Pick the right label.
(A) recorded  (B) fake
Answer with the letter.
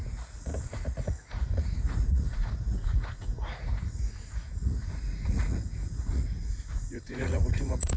B